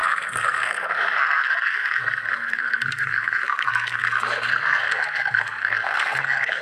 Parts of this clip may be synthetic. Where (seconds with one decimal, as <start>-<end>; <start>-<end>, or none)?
0.0-6.6